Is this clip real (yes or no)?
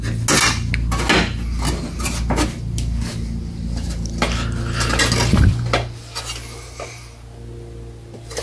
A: yes